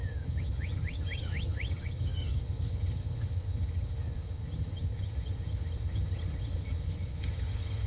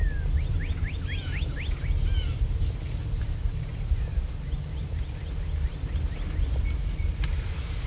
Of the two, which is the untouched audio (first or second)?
second